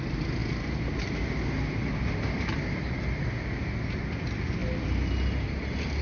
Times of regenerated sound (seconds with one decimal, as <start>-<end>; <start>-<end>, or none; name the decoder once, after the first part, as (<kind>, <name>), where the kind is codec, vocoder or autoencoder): none